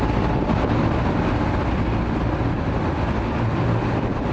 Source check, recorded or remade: remade